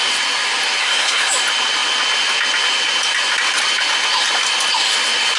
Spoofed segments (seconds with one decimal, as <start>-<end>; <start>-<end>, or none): 0.8-1.3